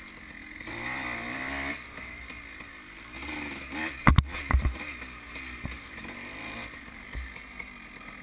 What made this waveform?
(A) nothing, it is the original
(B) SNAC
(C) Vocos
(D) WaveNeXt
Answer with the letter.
A